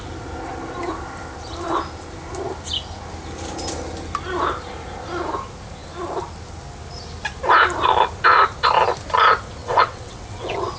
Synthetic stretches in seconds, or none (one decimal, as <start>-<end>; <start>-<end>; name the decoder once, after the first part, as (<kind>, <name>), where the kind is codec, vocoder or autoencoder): 9.6-10.8 (vocoder, WaveNeXt)